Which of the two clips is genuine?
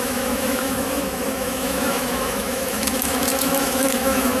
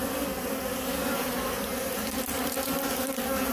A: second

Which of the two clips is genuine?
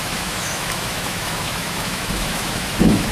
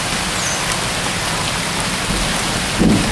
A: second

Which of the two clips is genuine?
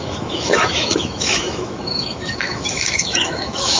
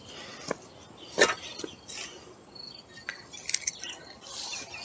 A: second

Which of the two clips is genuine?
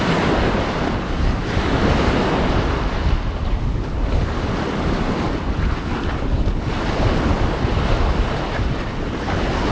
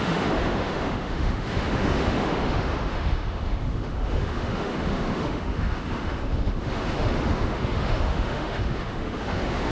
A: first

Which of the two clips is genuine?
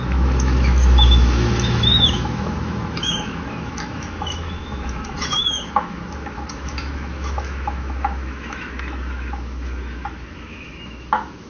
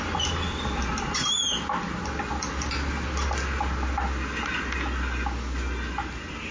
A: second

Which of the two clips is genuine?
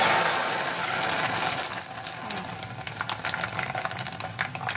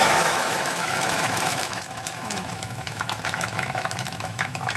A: first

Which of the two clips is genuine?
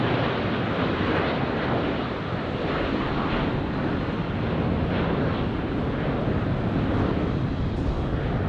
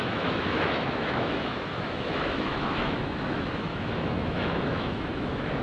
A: first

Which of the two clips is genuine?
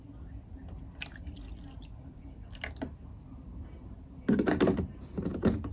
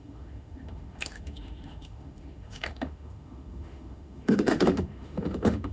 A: first